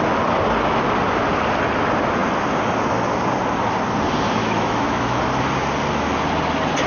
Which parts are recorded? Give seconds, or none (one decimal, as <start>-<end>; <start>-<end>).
0.0-4.4; 5.2-6.9